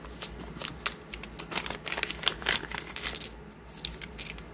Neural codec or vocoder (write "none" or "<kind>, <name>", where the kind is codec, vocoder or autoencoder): none